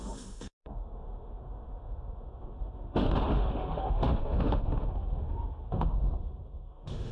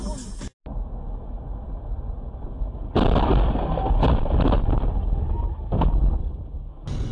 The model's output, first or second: first